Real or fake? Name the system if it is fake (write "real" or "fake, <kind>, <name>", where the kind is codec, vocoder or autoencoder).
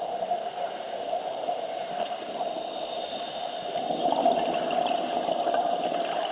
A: real